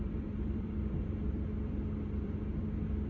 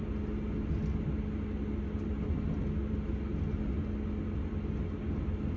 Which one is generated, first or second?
first